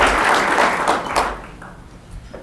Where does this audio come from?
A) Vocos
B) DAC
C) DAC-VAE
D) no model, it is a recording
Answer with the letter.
D